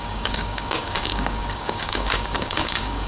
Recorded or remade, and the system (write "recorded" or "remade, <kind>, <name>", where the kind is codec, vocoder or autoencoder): remade, codec, DAC